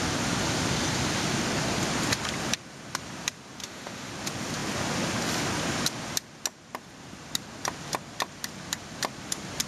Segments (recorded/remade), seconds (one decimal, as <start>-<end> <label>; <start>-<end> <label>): 0.0-3.6 recorded; 3.6-4.1 remade; 4.1-9.7 recorded